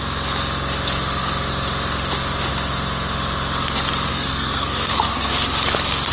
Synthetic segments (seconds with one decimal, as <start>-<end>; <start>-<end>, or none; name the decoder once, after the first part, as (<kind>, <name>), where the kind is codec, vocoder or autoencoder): 4.1-5.3 (codec, SNAC)